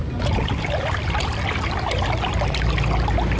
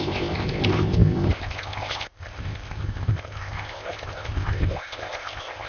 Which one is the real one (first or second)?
first